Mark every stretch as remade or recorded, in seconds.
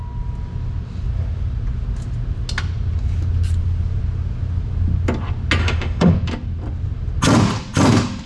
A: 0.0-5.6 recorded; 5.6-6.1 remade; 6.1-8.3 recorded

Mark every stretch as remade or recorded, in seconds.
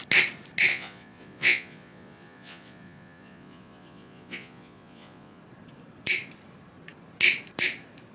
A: 0.0-0.7 recorded; 0.7-5.4 remade; 5.4-8.1 recorded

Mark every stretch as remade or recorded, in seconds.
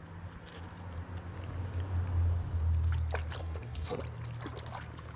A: 0.0-3.4 recorded; 3.4-4.0 remade; 4.0-5.2 recorded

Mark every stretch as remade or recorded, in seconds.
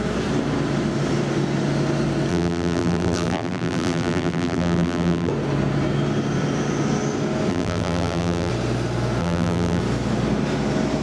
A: 0.0-2.3 recorded; 2.3-5.3 remade; 5.3-7.5 recorded; 7.5-8.5 remade; 8.5-9.2 recorded; 9.2-9.8 remade; 9.8-11.0 recorded